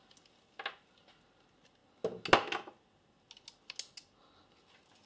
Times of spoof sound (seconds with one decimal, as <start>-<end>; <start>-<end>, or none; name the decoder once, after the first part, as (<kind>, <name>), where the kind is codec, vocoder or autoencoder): none